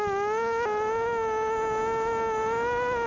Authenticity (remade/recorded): recorded